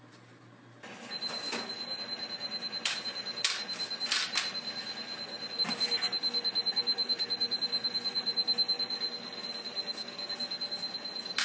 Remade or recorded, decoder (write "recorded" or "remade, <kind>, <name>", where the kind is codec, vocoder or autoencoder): recorded